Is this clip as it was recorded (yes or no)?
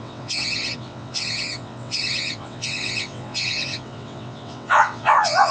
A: no